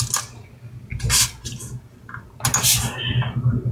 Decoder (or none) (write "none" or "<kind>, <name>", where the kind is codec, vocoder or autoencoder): none